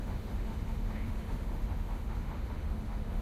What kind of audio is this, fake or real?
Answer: fake